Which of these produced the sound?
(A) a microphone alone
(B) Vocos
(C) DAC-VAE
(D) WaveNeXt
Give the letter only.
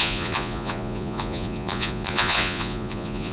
B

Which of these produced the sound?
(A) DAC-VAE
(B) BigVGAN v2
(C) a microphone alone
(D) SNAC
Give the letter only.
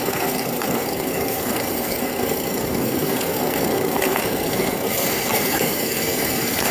D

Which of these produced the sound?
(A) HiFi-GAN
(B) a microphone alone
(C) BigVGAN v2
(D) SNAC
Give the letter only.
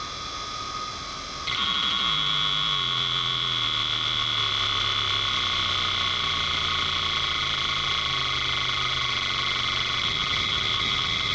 B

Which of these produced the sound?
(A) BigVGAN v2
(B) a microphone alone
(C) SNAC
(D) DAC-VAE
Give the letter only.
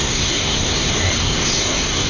C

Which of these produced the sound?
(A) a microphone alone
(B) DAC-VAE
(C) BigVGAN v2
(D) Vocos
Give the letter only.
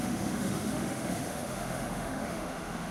B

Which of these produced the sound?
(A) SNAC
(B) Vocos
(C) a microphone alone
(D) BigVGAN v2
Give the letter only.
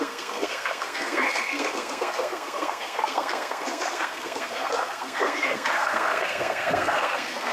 A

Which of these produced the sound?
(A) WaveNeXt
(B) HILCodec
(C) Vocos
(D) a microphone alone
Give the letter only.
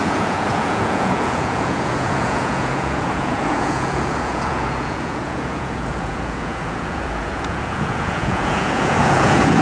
C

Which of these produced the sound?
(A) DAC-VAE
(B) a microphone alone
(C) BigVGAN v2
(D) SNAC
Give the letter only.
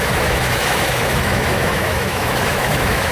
A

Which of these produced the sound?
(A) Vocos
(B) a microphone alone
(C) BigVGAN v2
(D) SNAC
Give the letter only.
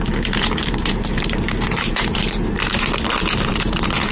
C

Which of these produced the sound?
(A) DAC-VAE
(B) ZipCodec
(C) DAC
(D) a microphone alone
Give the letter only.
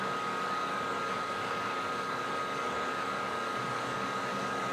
C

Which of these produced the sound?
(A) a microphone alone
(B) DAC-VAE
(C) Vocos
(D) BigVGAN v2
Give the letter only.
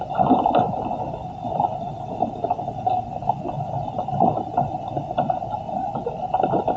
A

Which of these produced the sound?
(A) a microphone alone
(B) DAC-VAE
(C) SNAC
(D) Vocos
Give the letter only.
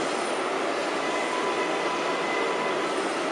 A